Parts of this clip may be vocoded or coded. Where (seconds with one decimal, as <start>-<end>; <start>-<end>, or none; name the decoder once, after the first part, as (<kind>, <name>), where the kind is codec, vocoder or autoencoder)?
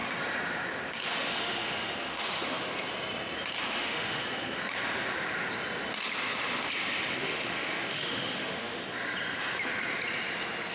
1.1-2.4 (autoencoder, DAC-VAE); 3.7-4.2; 7.2-8.8